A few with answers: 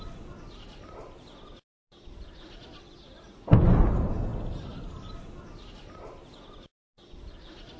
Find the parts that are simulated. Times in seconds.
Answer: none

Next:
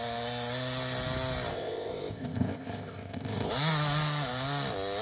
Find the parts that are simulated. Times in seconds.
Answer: 1.5-3.5 (codec, ZipCodec)